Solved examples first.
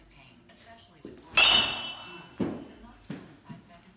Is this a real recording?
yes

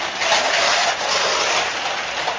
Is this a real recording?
yes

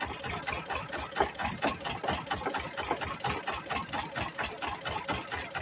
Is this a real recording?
yes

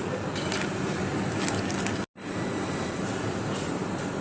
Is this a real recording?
yes